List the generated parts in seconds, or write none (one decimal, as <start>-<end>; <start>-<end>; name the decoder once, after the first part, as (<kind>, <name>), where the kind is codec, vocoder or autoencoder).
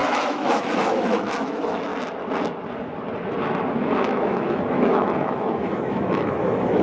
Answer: 0.0-1.9 (autoencoder, DAC-VAE); 3.7-6.8